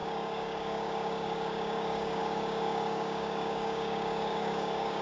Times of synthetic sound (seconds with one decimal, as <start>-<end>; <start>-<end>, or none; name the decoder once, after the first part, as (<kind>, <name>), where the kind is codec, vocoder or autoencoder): 0.0-5.0 (codec, DAC)